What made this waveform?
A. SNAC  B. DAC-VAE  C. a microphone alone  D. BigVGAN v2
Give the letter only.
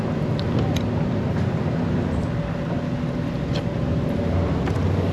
C